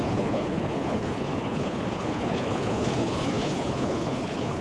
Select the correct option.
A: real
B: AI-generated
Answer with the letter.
B